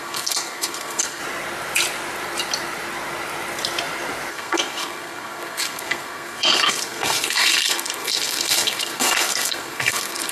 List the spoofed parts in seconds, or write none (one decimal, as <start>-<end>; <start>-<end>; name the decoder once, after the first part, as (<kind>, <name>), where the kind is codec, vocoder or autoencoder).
0.0-1.2 (codec, SNAC); 4.3-10.3